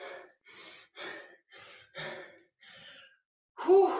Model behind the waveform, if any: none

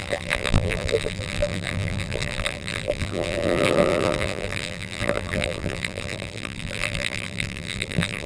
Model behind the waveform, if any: vocoder, BigVGAN v2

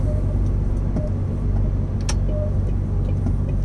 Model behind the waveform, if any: none